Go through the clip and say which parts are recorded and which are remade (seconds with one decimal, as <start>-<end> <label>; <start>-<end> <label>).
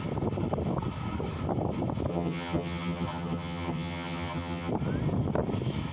0.0-2.1 recorded; 2.1-4.7 remade; 4.7-5.9 recorded